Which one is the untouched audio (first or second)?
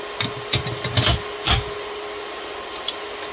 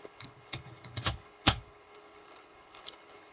first